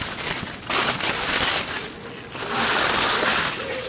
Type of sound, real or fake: real